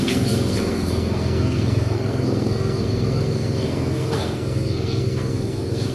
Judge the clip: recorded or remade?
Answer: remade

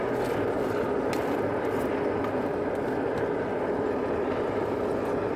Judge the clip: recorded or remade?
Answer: recorded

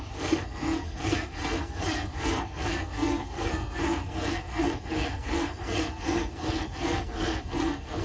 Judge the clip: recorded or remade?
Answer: remade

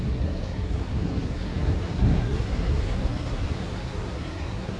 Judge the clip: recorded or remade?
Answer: remade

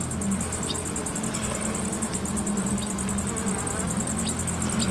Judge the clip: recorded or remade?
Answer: recorded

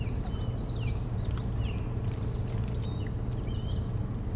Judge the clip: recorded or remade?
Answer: recorded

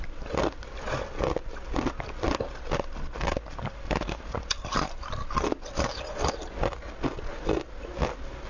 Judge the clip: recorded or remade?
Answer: recorded